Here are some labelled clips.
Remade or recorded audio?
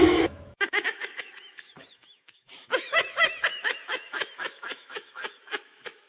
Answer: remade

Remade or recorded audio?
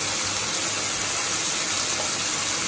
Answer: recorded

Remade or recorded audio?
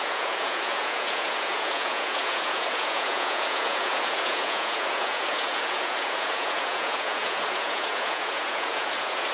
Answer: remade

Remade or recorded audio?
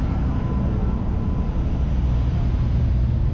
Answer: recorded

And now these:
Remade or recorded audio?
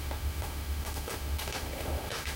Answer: remade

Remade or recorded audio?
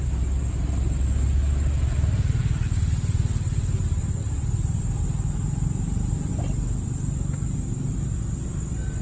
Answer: recorded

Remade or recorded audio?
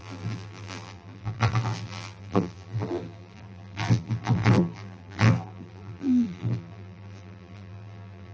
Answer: remade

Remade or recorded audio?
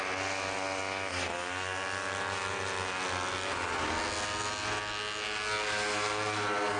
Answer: recorded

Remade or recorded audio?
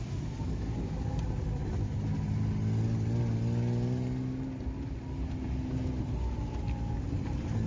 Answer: recorded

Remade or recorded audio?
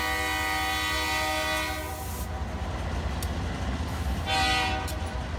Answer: recorded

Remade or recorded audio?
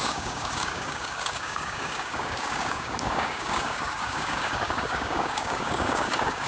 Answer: remade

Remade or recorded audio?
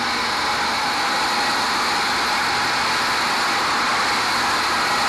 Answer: recorded